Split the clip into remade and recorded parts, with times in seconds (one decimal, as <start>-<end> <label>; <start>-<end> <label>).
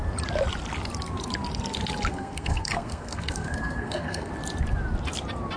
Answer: 0.0-2.1 recorded; 2.1-4.3 remade; 4.3-5.6 recorded